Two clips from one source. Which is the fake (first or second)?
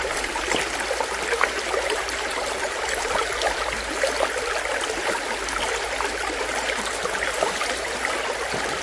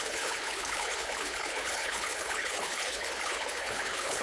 second